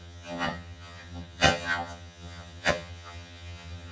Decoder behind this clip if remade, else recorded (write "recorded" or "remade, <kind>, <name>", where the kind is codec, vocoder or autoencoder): remade, vocoder, HiFi-GAN